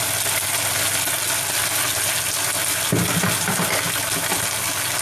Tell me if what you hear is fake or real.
real